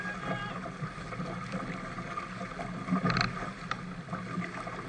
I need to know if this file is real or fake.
real